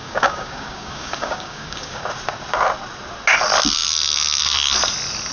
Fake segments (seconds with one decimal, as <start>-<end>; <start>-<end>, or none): 0.0-2.0